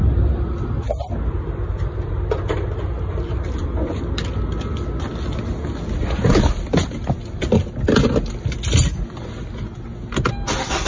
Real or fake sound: real